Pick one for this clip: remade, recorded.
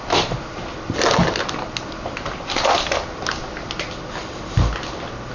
recorded